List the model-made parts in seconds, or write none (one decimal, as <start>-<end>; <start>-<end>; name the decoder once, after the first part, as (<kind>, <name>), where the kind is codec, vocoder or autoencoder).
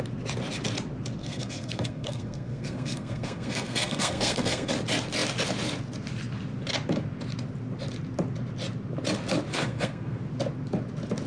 1.2-4.7 (codec, SNAC); 9.5-10.2